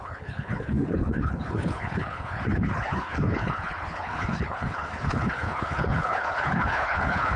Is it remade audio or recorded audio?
remade